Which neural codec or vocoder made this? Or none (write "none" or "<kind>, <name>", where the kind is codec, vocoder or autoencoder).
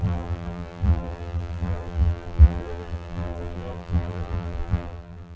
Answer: vocoder, BigVGAN v2